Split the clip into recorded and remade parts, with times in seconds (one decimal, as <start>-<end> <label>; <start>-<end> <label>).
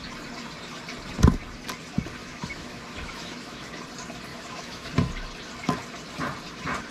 0.0-2.2 recorded; 2.2-3.7 remade; 3.7-4.3 recorded; 4.3-4.9 remade; 4.9-6.9 recorded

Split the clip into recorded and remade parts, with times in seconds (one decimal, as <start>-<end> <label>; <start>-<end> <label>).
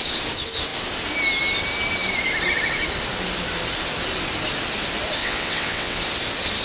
0.0-5.2 recorded; 5.2-6.0 remade; 6.0-6.6 recorded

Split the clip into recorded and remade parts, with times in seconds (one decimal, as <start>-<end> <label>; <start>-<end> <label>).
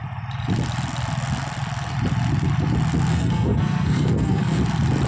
0.0-3.1 recorded; 3.1-4.6 remade; 4.6-5.1 recorded